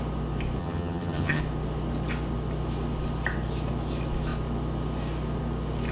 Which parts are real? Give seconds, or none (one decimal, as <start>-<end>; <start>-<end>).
0.0-0.6; 1.4-5.9